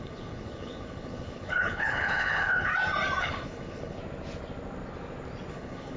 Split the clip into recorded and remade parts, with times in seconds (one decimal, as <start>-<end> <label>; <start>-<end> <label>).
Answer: 0.0-2.7 remade; 2.7-3.2 recorded; 3.2-4.0 remade; 4.0-5.5 recorded; 5.5-6.0 remade